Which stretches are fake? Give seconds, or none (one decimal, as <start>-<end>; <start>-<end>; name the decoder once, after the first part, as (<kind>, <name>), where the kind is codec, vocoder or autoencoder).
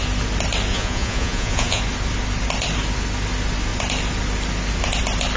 0.7-1.8 (vocoder, Vocos)